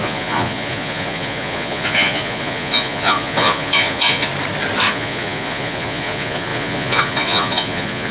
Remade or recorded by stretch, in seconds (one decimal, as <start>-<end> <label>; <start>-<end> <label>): 0.0-4.3 remade; 4.3-4.9 recorded; 4.9-8.1 remade